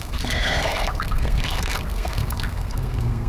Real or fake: fake